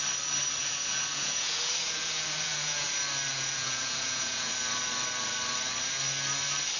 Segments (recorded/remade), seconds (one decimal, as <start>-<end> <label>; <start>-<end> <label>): 0.0-0.6 recorded; 0.6-2.9 remade; 2.9-3.3 recorded; 3.3-4.5 remade; 4.5-6.8 recorded